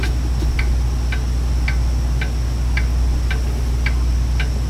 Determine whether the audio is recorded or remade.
recorded